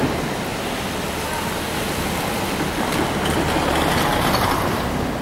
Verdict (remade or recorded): recorded